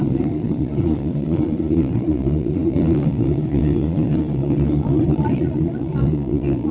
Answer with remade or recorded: remade